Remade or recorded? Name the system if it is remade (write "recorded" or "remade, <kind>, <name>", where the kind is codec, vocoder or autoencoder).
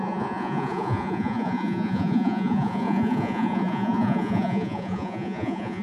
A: remade, vocoder, Vocos